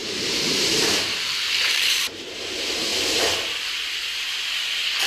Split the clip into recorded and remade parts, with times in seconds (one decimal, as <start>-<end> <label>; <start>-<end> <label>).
0.0-2.3 remade; 2.3-5.1 recorded

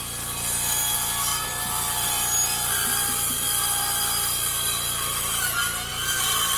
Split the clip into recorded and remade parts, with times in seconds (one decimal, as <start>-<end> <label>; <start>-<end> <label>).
0.0-1.3 recorded; 1.3-5.3 remade; 5.3-5.9 recorded; 5.9-6.6 remade

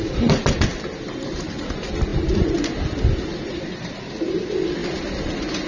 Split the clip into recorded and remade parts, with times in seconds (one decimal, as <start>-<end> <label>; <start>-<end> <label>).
0.0-5.7 recorded